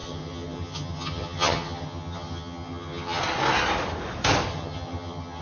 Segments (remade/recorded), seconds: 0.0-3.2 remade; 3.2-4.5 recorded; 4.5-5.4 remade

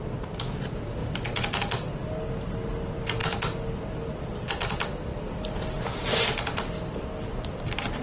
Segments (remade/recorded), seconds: 0.0-8.0 recorded

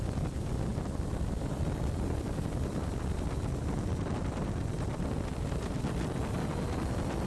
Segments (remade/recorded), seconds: 0.0-7.3 recorded

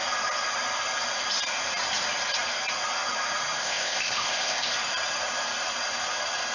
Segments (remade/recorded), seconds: 0.0-3.6 recorded; 3.6-4.7 remade; 4.7-6.5 recorded

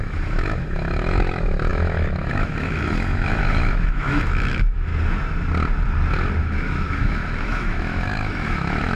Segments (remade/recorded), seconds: 0.0-4.9 remade; 4.9-6.4 recorded; 6.4-8.9 remade

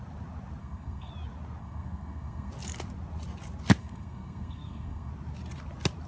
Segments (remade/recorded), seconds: 0.0-0.6 recorded; 0.6-1.1 remade; 1.1-1.6 recorded; 1.6-2.5 remade; 2.5-3.8 recorded; 3.8-5.1 remade; 5.1-6.1 recorded

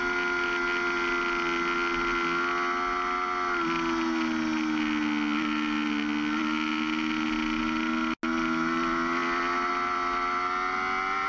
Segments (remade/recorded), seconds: 0.0-11.3 recorded